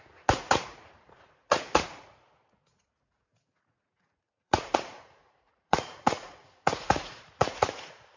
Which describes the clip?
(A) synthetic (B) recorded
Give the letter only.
A